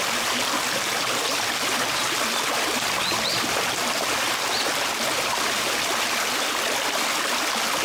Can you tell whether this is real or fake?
real